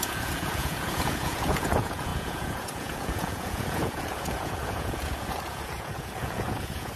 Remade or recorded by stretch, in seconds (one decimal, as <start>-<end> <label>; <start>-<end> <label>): 0.0-7.0 remade